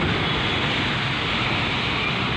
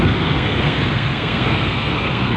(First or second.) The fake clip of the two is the second